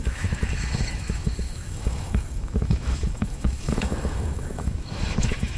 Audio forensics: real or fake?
fake